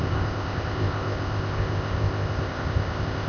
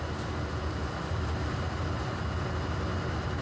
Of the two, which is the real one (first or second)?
second